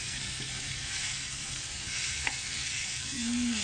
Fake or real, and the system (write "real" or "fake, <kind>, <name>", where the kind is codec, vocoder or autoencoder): fake, codec, SNAC